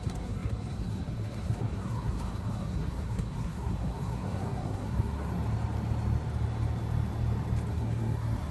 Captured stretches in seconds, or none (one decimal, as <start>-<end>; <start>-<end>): 5.3-7.7